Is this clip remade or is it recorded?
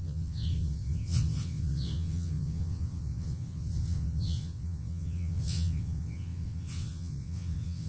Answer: remade